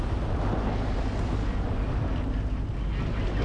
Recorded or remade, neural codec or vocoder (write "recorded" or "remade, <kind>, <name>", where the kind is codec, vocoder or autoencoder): recorded